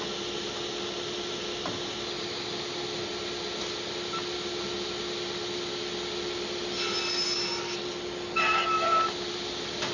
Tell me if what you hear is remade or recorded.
recorded